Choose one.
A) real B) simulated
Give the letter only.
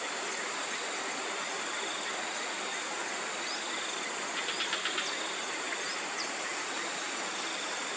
A